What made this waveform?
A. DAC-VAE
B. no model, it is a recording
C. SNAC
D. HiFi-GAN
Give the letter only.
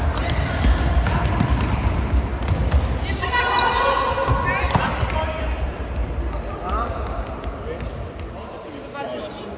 B